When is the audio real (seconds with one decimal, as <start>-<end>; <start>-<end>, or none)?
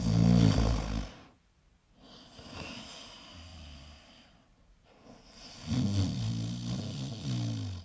0.0-7.8